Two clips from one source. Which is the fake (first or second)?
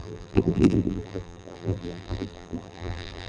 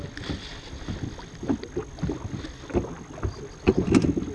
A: first